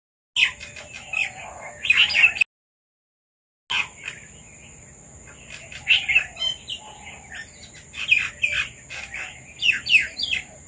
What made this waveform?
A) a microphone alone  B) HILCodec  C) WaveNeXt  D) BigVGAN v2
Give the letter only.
A